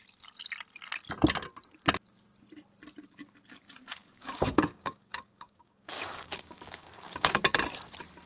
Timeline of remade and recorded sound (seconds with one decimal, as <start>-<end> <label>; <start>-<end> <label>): 0.0-4.0 recorded; 4.0-7.4 remade; 7.4-8.3 recorded